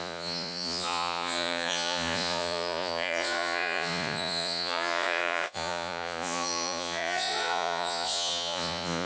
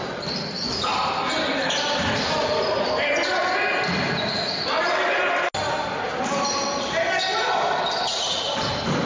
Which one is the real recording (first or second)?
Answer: second